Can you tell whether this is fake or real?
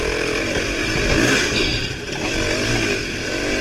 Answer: real